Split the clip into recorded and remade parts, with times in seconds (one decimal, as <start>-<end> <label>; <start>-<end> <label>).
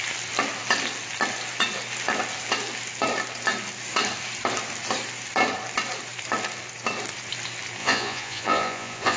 0.0-7.8 recorded; 7.8-9.2 remade